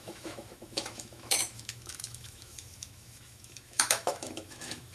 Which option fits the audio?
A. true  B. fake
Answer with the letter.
B